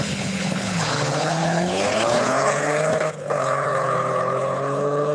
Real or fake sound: fake